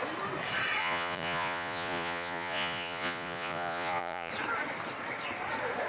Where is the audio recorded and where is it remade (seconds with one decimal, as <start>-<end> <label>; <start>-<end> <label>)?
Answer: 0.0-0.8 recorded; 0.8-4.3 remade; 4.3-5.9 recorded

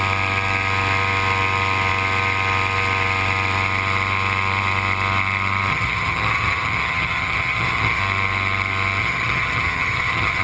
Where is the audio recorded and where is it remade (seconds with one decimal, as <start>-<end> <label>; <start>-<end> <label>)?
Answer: 0.0-5.7 recorded; 5.7-8.0 remade; 8.0-9.0 recorded; 9.0-10.4 remade

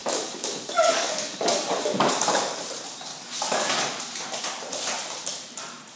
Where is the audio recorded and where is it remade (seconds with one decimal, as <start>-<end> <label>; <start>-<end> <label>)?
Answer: 0.0-2.7 remade; 2.7-3.1 recorded; 3.1-4.0 remade; 4.0-6.0 recorded

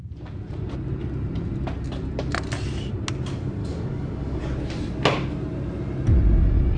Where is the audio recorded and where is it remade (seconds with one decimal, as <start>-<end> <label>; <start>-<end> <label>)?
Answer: 0.0-3.6 recorded; 3.6-4.4 remade; 4.4-6.8 recorded

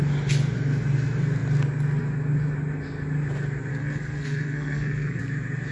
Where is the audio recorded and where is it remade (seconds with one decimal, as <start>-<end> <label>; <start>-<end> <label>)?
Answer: 0.0-3.7 recorded; 3.7-5.2 remade; 5.2-5.7 recorded

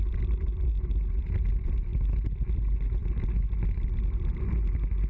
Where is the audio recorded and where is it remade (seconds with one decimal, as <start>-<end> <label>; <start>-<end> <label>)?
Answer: 0.0-5.1 recorded

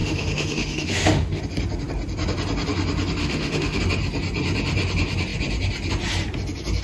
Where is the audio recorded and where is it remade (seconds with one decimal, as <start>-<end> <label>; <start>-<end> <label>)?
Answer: 0.0-1.4 remade; 1.4-3.2 recorded; 3.2-3.8 remade; 3.8-6.8 recorded